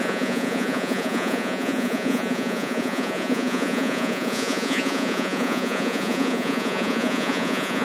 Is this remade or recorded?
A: remade